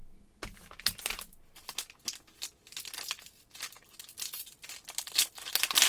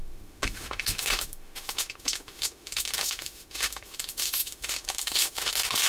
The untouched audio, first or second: first